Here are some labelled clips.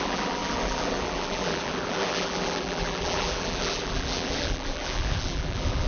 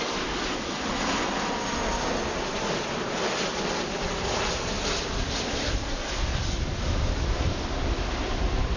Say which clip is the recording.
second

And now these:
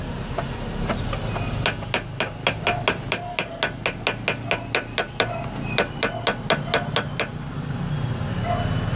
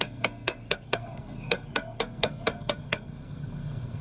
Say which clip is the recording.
first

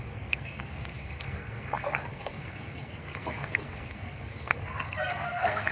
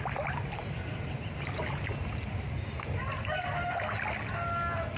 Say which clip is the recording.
second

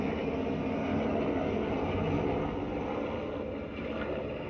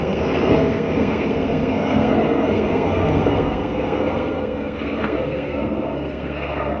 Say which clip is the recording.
first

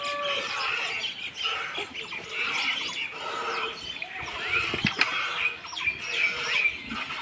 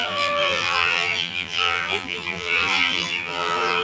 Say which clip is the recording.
first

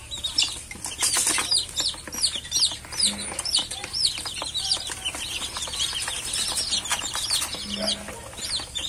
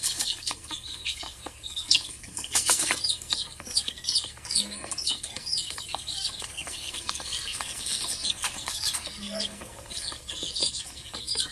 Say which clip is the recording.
first